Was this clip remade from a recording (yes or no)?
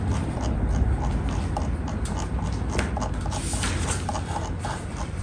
no